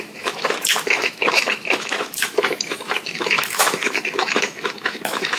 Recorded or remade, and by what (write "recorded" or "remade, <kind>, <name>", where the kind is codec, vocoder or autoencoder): remade, autoencoder, DAC-VAE